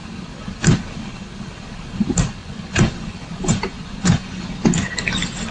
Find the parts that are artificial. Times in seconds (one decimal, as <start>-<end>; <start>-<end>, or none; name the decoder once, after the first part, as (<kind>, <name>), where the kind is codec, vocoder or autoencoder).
2.4-4.4 (vocoder, Vocos)